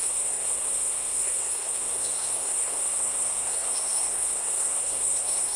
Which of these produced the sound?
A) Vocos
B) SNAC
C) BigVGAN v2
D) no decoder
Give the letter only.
B